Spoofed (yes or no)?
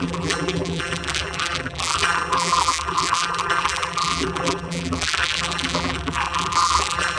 yes